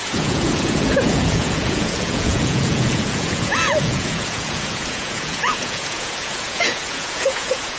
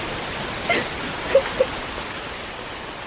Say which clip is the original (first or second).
second